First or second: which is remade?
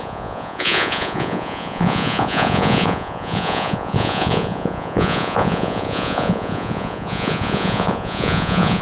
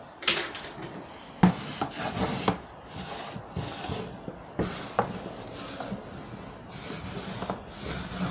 first